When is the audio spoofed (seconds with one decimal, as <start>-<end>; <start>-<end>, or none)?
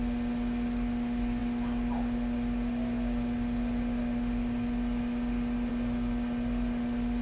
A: none